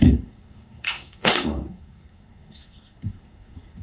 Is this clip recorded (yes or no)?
no